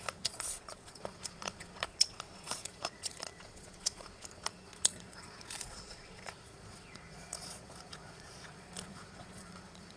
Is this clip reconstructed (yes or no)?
yes